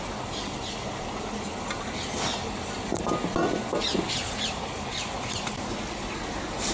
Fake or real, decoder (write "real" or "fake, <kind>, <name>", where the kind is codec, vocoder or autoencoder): real